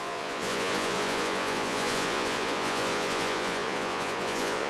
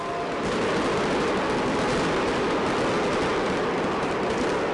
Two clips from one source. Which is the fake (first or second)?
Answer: first